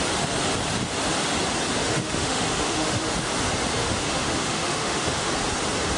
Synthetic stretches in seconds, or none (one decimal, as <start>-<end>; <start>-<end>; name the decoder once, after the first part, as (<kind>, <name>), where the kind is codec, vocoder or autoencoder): 1.8-3.1 (autoencoder, DAC-VAE); 3.8-5.3